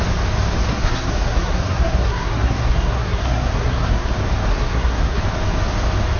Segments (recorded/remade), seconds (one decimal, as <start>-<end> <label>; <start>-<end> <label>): 0.0-0.7 recorded; 0.7-4.1 remade; 4.1-4.5 recorded; 4.5-5.2 remade; 5.2-6.2 recorded